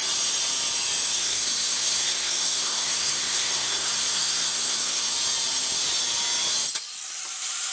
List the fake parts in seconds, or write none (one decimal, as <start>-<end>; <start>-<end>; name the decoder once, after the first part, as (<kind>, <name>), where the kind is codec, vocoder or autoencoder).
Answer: 1.1-5.1 (codec, SNAC)